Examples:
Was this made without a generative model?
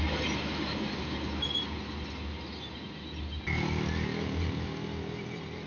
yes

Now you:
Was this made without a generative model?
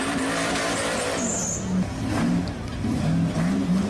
yes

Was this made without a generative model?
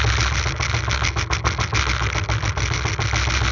yes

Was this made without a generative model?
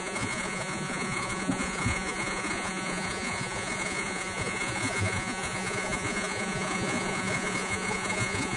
no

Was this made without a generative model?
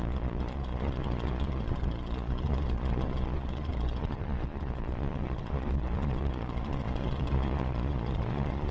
no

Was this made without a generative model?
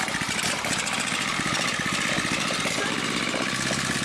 yes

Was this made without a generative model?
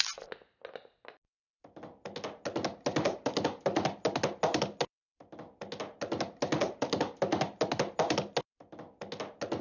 yes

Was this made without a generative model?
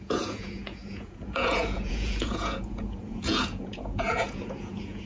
no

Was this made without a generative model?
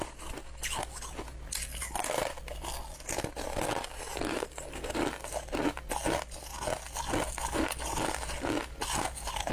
yes